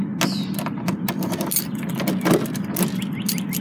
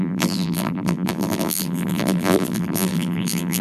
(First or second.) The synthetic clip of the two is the second